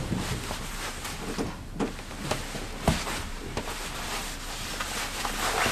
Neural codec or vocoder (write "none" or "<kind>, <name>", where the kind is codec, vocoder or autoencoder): none